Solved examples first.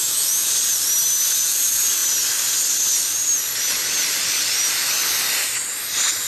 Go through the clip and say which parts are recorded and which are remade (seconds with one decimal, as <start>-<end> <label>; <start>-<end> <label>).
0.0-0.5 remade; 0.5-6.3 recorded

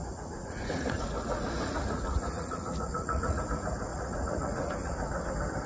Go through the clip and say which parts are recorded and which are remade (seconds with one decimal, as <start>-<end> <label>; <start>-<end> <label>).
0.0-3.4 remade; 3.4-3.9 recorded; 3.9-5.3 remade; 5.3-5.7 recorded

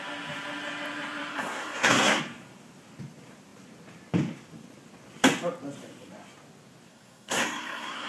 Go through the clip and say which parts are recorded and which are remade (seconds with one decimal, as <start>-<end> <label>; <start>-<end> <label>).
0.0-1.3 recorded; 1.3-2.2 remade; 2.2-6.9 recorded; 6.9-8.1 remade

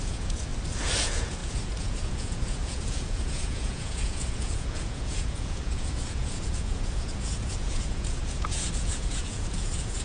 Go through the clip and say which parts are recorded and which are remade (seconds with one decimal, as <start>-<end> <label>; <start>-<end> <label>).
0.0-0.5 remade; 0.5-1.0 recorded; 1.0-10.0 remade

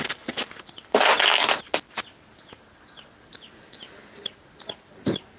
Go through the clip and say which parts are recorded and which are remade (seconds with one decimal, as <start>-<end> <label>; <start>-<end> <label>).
0.0-5.4 recorded

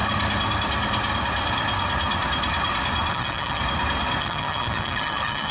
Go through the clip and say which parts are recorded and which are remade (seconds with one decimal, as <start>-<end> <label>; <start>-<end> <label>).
0.0-3.1 recorded; 3.1-3.6 remade; 3.6-4.2 recorded; 4.2-5.5 remade